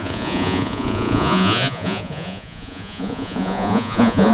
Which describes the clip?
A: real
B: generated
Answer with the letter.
B